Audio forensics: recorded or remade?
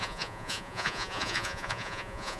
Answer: remade